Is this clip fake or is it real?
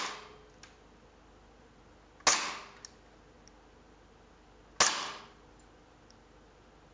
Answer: real